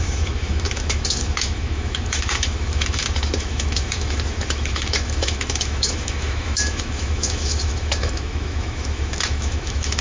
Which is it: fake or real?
fake